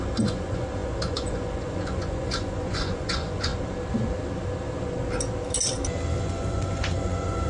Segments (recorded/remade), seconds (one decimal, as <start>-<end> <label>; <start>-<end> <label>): 0.0-3.5 remade; 3.5-6.2 recorded; 6.2-7.5 remade

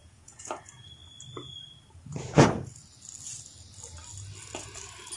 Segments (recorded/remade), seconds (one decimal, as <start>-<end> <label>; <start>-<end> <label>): 0.0-0.6 remade; 0.6-5.2 recorded

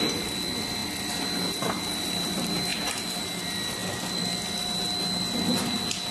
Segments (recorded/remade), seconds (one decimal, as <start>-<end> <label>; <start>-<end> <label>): 0.0-6.1 recorded

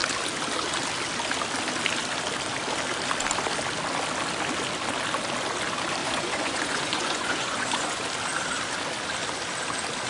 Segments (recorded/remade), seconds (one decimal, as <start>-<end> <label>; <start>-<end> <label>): 0.0-6.0 recorded; 6.0-8.0 remade; 8.0-10.1 recorded

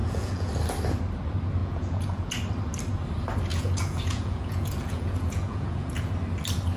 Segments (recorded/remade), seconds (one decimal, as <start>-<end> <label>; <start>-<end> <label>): 0.0-0.5 remade; 0.5-1.6 recorded; 1.6-2.3 remade; 2.3-3.5 recorded; 3.5-6.1 remade; 6.1-6.8 recorded

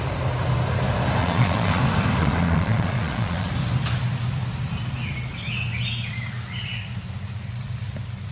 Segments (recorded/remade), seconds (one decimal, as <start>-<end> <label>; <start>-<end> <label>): 0.0-1.2 recorded; 1.2-1.8 remade; 1.8-2.2 recorded; 2.2-3.5 remade; 3.5-8.3 recorded